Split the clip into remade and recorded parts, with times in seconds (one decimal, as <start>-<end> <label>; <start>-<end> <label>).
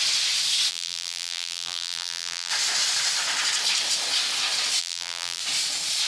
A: 0.0-0.7 recorded; 0.7-2.5 remade; 2.5-4.8 recorded; 4.8-5.4 remade; 5.4-6.1 recorded